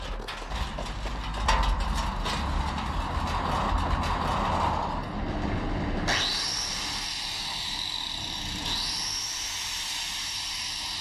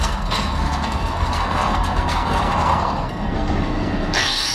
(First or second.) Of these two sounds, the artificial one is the second